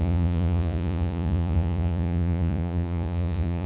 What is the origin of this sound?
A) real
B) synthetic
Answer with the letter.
B